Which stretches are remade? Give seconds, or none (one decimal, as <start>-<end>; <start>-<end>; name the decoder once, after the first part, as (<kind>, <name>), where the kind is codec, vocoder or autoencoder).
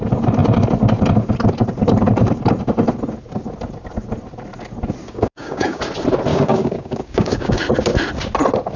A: 5.0-5.8 (codec, DAC); 6.3-7.6